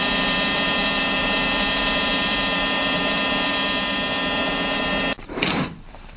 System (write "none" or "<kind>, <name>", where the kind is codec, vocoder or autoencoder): vocoder, BigVGAN v2